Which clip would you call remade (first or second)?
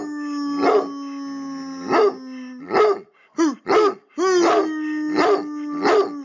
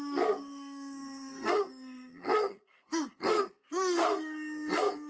second